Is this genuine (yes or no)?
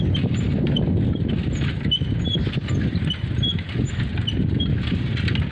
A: yes